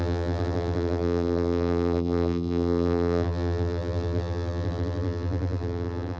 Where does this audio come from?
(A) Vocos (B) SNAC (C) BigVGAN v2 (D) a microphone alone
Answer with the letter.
C